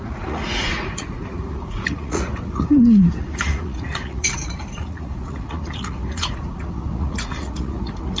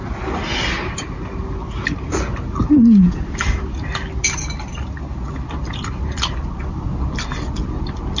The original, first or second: second